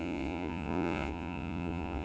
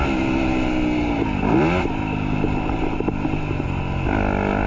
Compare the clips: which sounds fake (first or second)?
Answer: first